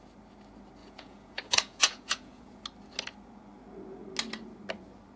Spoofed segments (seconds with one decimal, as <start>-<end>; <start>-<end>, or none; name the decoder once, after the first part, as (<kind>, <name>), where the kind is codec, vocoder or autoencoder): 0.8-2.6 (vocoder, Vocos)